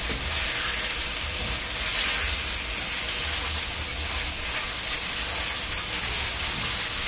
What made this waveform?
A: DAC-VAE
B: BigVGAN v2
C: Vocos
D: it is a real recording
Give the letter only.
D